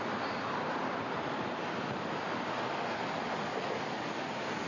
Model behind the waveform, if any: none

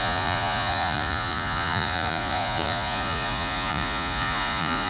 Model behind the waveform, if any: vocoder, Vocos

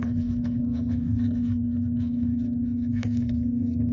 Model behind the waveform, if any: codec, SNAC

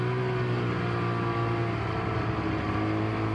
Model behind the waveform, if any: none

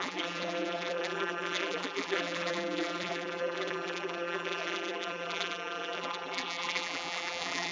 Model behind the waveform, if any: vocoder, BigVGAN v2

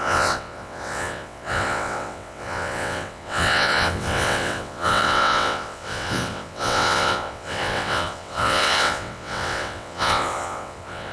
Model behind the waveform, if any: vocoder, WaveNeXt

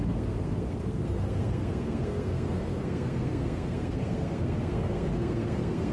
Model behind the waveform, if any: codec, SNAC